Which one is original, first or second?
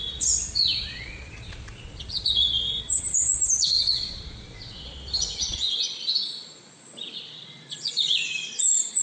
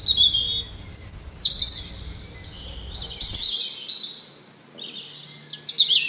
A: second